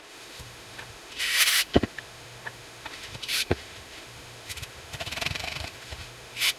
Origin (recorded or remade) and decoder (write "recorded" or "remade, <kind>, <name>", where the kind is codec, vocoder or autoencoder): remade, autoencoder, DAC-VAE